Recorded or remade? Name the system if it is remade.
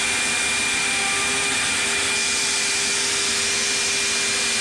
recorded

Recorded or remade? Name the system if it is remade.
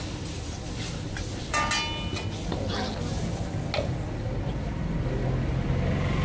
recorded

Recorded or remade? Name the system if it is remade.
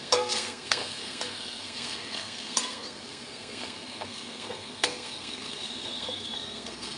remade, codec, SNAC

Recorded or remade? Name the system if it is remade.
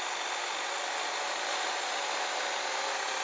recorded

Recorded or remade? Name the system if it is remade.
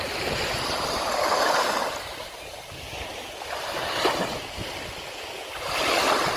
recorded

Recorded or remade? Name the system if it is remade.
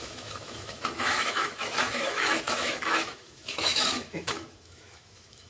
remade, autoencoder, DAC-VAE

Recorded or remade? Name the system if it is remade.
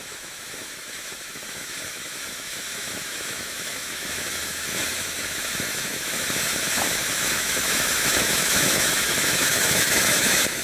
remade, autoencoder, DAC-VAE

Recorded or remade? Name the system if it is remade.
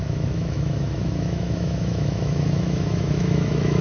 remade, autoencoder, DAC-VAE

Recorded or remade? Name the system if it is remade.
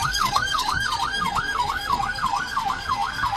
remade, codec, SNAC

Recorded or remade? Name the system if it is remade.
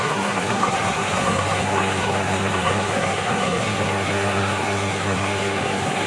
remade, codec, SNAC